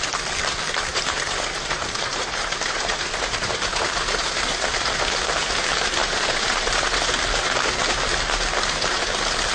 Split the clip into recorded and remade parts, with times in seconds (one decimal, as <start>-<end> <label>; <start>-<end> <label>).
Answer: 0.0-0.9 recorded; 0.9-4.6 remade; 4.6-6.0 recorded; 6.0-7.1 remade; 7.1-9.5 recorded